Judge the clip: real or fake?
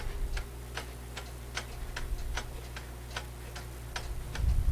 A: real